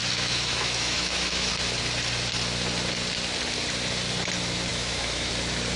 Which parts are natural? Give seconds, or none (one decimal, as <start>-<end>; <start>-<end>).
1.5-4.7; 5.3-5.8